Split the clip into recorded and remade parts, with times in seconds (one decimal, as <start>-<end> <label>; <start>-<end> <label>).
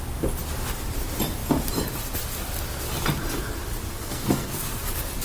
0.0-3.9 recorded; 3.9-4.8 remade; 4.8-5.2 recorded